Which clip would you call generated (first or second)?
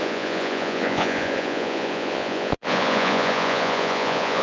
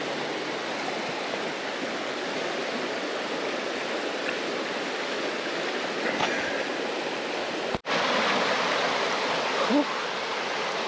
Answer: first